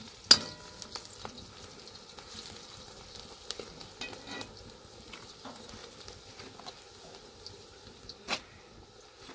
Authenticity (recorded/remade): recorded